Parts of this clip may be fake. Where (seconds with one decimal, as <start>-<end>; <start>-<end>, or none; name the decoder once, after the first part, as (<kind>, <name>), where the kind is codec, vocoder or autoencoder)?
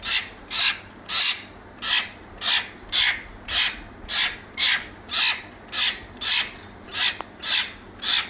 none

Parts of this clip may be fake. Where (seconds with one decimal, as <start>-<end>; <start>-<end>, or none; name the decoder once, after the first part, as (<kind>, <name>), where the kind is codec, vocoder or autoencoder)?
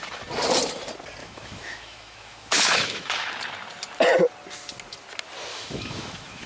1.2-3.3 (autoencoder, DAC-VAE); 5.5-6.5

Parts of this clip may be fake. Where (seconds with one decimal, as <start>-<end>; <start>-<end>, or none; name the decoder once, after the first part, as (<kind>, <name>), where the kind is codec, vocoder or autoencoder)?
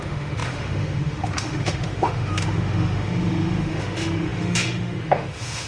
0.0-5.7 (autoencoder, DAC-VAE)